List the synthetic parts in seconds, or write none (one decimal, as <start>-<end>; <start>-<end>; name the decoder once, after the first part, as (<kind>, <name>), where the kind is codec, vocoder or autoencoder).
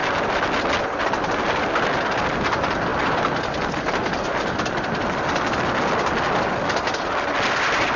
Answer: none